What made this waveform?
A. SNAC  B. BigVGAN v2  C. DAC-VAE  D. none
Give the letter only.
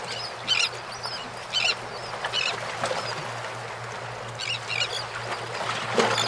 D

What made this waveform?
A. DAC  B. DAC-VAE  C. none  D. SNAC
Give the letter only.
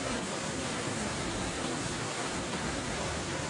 D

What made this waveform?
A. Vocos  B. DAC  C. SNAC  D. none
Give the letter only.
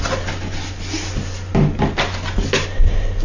D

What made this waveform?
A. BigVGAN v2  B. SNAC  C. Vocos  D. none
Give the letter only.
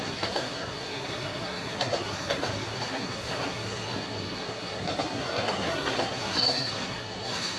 B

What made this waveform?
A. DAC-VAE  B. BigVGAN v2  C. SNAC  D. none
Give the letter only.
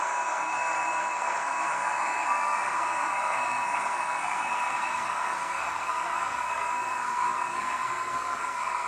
C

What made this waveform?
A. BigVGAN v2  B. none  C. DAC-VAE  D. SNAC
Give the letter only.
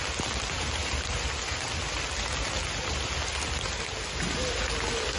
B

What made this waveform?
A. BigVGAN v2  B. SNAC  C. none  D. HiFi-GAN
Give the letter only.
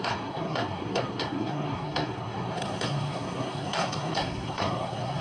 B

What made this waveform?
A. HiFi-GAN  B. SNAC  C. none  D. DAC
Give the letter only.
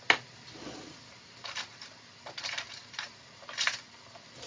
C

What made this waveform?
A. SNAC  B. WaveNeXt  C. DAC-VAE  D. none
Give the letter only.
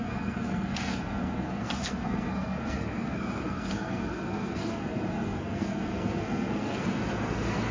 A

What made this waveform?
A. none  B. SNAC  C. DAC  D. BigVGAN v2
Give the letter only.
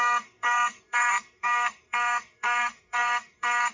B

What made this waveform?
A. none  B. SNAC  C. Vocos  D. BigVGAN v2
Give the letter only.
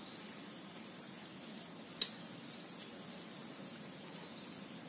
A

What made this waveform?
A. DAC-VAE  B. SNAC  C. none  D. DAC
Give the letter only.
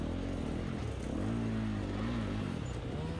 C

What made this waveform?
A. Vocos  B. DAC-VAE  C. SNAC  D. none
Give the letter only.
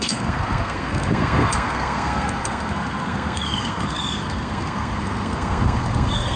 C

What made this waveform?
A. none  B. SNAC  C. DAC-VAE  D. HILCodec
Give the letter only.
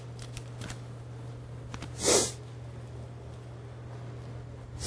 A